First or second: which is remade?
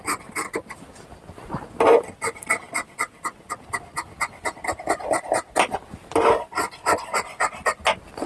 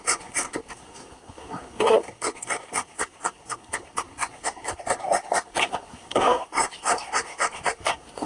second